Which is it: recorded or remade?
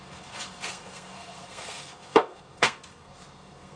remade